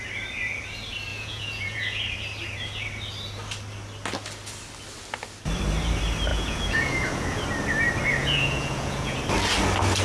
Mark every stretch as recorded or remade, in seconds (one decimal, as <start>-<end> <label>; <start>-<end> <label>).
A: 0.0-1.1 recorded; 1.1-2.0 remade; 2.0-6.3 recorded; 6.3-7.4 remade; 7.4-8.2 recorded; 8.2-9.2 remade; 9.2-10.0 recorded